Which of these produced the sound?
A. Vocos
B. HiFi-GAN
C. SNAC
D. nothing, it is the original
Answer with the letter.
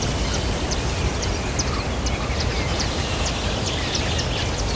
D